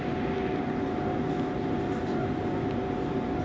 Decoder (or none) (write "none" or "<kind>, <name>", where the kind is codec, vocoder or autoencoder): none